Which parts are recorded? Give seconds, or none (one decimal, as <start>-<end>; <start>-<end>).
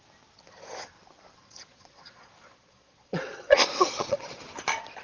0.0-1.4; 4.4-5.0